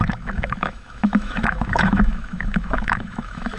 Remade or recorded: remade